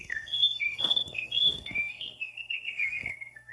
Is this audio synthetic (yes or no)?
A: yes